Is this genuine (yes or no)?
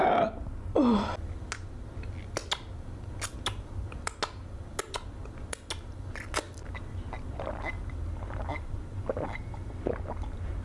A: yes